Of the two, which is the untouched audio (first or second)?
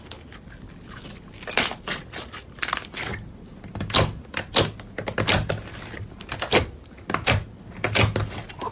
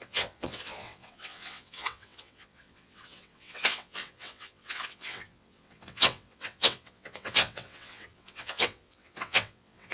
first